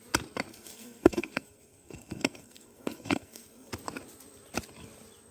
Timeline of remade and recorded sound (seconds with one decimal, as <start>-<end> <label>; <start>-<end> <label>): 0.0-0.5 recorded; 0.5-3.7 remade; 3.7-5.3 recorded